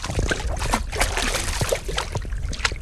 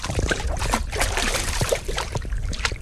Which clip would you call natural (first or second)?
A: first